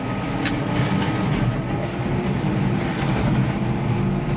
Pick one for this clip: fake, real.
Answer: real